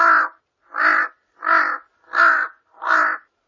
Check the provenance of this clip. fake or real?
real